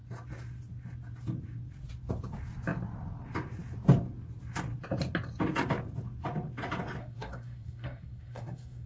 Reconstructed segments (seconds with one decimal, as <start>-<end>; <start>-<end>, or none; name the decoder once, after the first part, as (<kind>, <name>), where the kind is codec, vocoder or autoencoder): 7.0-8.9 (codec, SNAC)